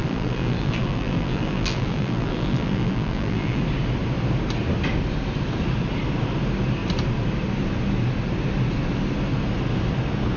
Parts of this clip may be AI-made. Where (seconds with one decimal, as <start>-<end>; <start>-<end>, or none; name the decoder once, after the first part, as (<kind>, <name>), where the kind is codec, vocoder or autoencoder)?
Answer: 0.0-3.6 (vocoder, BigVGAN v2)

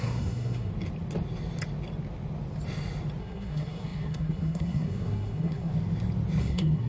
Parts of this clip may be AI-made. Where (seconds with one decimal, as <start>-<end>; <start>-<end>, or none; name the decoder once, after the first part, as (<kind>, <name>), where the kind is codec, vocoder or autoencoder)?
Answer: 0.0-0.7 (codec, SNAC); 3.2-5.7; 6.4-6.9

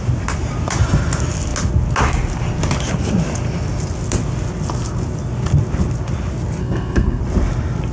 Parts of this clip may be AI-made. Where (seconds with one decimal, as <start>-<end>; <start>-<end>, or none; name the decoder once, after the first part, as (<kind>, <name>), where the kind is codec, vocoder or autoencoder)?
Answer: 6.6-7.2 (codec, SNAC)